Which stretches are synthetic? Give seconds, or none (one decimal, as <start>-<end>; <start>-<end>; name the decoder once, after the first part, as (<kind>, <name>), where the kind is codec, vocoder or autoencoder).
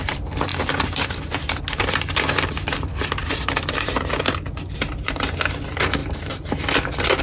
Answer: 0.5-1.6 (vocoder, BigVGAN v2); 3.2-4.0